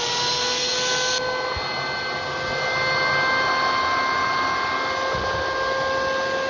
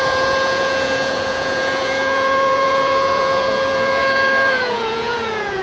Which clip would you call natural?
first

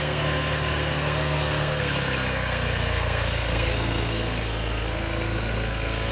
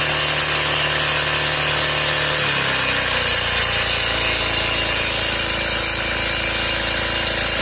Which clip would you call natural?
second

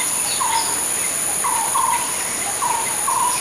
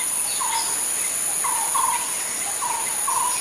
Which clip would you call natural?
second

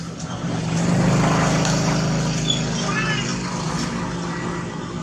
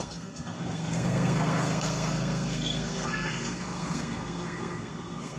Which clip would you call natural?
first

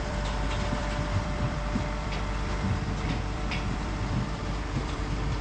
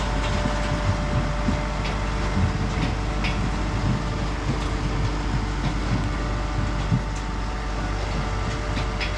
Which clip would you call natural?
second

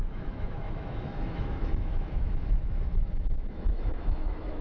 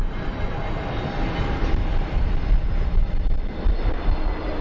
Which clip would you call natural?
second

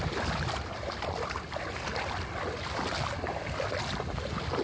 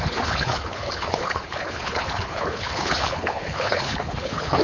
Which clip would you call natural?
first